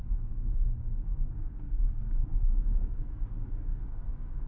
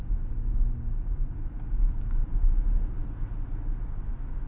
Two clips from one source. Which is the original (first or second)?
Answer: second